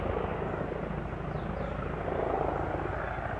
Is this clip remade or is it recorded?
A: recorded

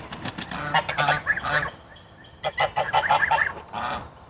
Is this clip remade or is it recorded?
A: recorded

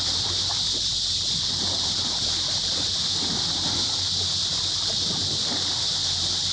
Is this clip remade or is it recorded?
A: recorded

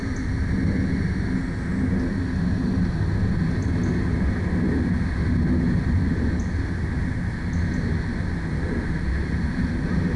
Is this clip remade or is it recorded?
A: recorded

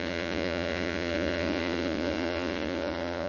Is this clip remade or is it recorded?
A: remade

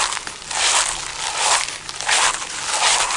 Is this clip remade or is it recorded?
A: recorded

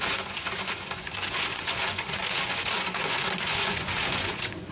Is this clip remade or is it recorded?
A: remade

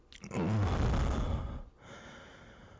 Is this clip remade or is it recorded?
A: recorded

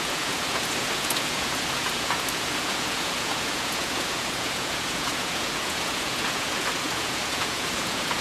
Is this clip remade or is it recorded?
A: remade